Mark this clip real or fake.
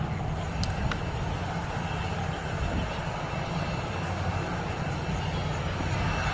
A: real